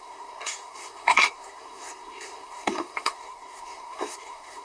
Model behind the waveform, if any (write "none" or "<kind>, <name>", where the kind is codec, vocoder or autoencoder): codec, SNAC